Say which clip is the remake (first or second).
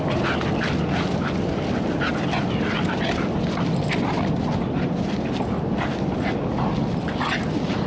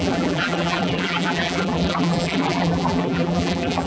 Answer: second